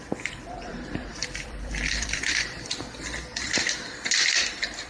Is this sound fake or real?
fake